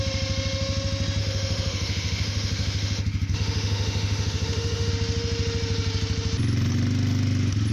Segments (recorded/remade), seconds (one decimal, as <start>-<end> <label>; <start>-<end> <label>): 0.0-1.2 recorded; 1.2-4.9 remade; 4.9-7.7 recorded